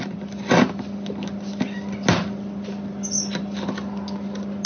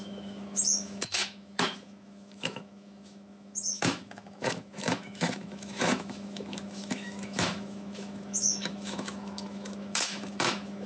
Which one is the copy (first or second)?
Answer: second